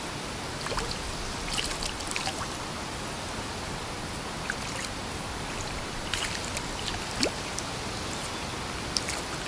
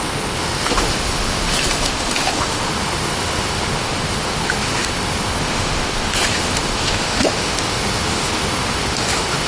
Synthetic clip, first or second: second